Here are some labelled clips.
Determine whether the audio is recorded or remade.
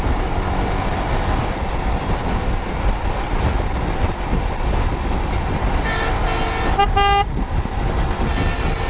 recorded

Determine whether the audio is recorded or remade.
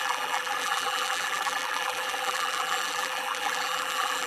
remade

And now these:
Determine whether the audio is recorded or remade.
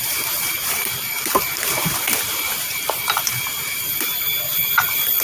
remade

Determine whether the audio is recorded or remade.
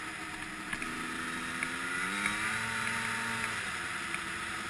recorded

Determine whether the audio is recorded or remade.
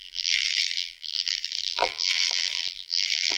remade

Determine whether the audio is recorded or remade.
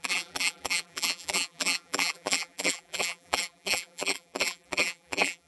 remade